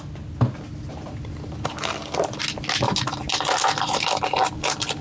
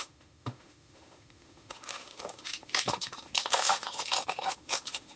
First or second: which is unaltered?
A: first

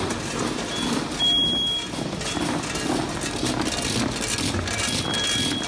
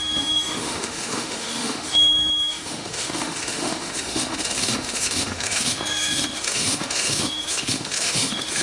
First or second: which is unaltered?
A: first